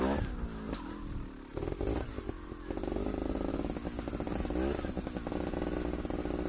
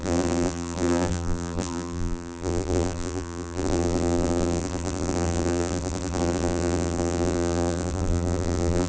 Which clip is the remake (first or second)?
second